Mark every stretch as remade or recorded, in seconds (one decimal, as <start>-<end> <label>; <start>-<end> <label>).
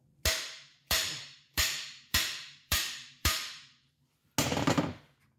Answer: 0.0-0.7 recorded; 0.7-3.9 remade; 3.9-5.4 recorded